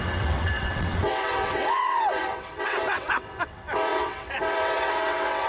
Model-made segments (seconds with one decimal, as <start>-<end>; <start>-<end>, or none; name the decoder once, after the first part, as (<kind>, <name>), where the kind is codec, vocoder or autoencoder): 0.0-5.5 (vocoder, WaveNeXt)